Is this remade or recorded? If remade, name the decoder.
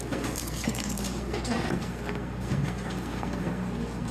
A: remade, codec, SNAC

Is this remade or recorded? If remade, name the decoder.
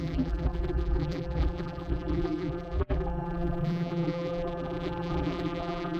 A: remade, vocoder, BigVGAN v2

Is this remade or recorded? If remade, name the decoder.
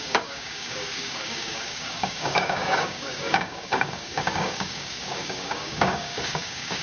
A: remade, codec, DAC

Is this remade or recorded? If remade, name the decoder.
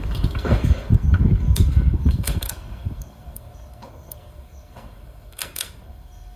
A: remade, codec, SNAC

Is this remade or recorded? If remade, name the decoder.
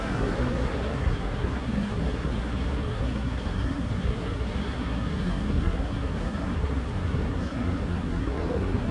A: remade, codec, SNAC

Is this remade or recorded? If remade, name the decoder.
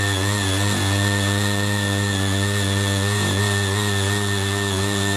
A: remade, vocoder, Vocos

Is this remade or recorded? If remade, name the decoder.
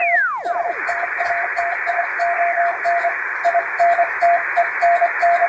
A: recorded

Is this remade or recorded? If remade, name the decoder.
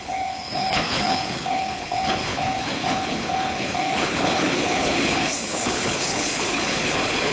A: remade, codec, HILCodec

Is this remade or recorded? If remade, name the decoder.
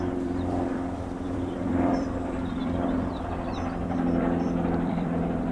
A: remade, vocoder, BigVGAN v2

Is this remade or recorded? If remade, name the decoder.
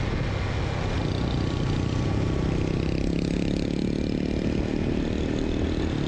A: recorded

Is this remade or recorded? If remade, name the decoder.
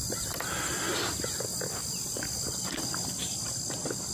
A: recorded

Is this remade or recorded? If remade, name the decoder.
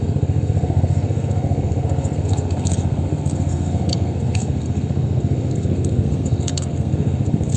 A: remade, codec, SNAC